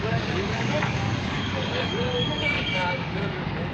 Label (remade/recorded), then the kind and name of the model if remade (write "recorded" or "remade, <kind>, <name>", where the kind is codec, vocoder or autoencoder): remade, codec, DAC